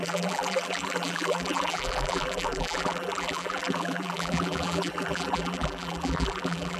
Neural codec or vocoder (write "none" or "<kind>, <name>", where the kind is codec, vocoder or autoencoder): vocoder, BigVGAN v2